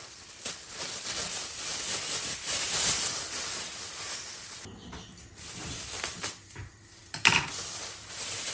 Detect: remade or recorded remade